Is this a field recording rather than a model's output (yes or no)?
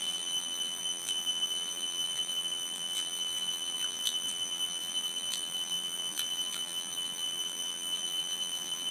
no